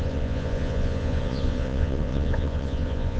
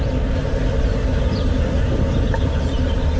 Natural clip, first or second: second